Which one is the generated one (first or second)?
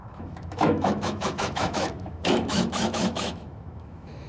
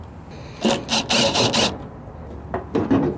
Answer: first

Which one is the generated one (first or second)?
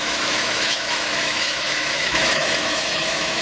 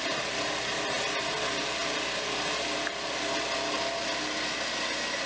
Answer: first